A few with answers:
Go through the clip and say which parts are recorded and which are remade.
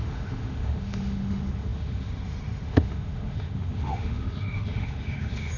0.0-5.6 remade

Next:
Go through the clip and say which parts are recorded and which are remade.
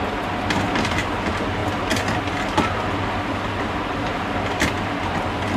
0.0-5.6 recorded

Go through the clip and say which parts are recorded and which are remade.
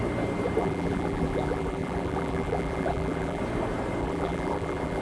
0.0-0.6 recorded; 0.6-3.4 remade; 3.4-4.0 recorded; 4.0-5.0 remade